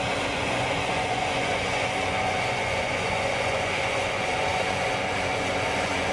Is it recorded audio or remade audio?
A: remade